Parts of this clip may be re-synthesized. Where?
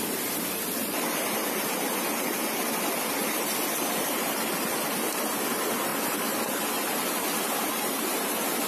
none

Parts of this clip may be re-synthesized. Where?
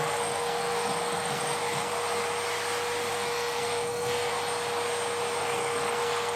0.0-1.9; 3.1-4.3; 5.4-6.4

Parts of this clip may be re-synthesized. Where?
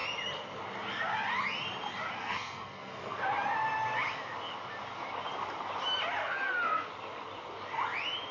2.2-3.2; 6.2-6.9